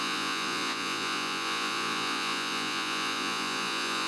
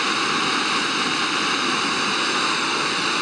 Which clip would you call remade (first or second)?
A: first